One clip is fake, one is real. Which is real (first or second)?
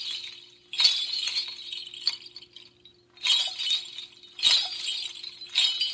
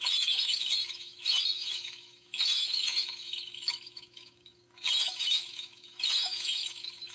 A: first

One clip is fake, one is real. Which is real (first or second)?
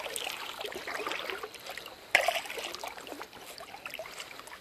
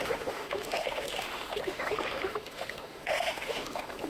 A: first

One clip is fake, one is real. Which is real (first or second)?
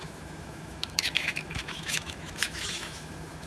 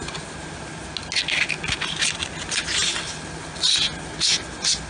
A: second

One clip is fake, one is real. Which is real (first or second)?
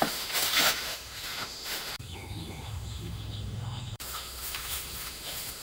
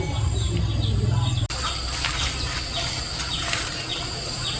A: second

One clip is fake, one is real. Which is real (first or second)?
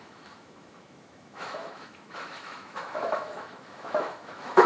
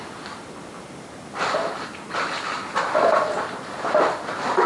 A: second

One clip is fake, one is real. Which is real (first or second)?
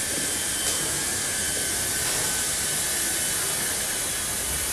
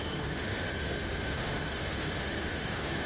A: first